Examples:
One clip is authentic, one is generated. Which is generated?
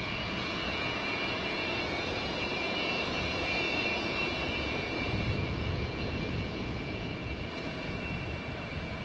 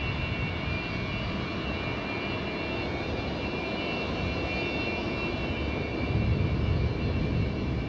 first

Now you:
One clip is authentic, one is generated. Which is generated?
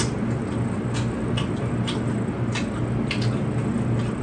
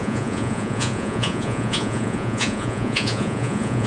second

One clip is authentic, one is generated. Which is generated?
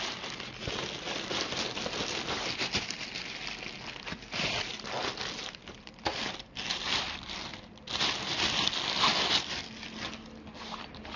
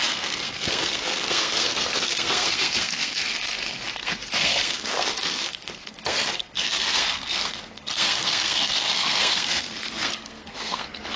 second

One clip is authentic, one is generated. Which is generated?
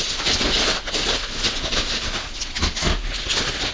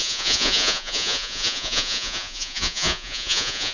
second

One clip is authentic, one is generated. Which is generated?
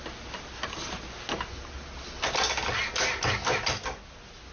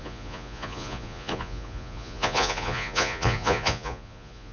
second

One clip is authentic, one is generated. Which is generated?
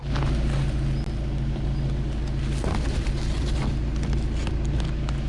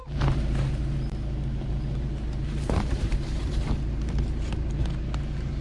second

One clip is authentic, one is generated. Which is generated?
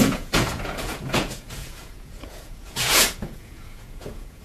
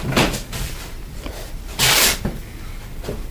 first